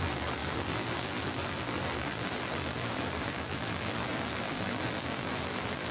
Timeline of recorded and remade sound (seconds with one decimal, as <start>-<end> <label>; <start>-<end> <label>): 0.0-5.9 remade